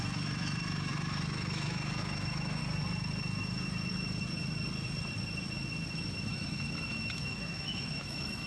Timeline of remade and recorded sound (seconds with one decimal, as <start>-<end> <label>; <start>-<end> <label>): 0.0-2.6 remade; 2.6-5.9 recorded; 5.9-8.5 remade